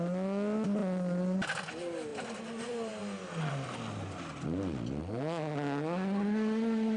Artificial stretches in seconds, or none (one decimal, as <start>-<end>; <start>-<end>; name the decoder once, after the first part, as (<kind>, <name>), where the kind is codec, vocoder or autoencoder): none